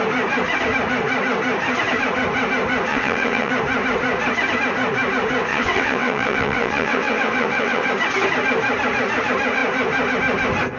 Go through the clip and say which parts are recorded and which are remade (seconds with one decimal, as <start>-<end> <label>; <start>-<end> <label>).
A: 0.0-2.9 recorded; 2.9-3.5 remade; 3.5-5.5 recorded; 5.5-7.9 remade; 7.9-10.8 recorded